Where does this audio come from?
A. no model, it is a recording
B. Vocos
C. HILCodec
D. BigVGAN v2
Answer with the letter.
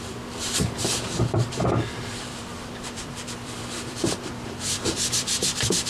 D